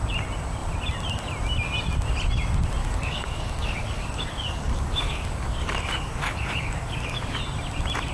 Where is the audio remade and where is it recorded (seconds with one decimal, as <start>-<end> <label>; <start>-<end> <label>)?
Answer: 0.0-2.8 recorded; 2.8-7.4 remade; 7.4-8.1 recorded